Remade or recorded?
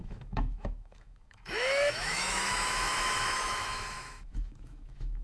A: remade